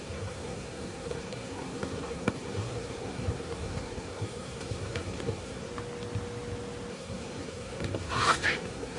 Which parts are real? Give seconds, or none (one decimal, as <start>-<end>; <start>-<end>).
5.7-6.9